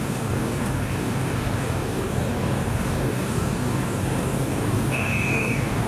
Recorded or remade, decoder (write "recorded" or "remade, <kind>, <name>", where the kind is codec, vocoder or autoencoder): remade, codec, DAC